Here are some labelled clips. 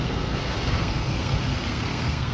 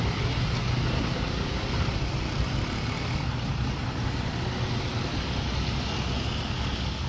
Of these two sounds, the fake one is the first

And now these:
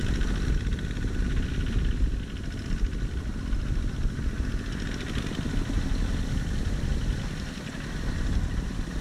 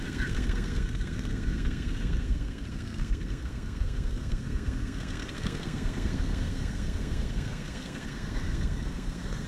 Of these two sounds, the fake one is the second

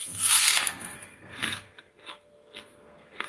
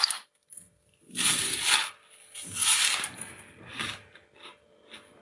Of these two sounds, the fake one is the first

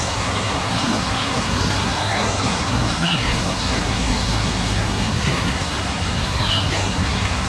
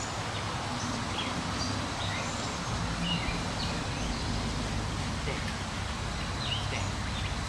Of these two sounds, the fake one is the first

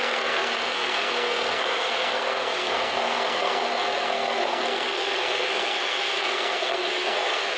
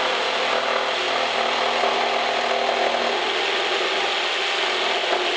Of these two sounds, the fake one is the first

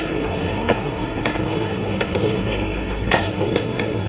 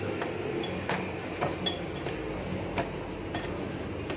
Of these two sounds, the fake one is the first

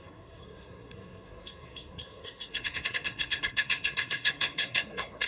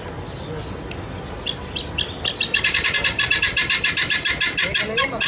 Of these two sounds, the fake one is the first